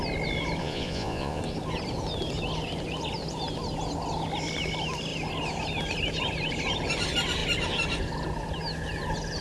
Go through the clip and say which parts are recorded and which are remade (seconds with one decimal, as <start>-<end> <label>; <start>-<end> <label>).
0.0-0.6 recorded; 0.6-1.4 remade; 1.4-9.4 recorded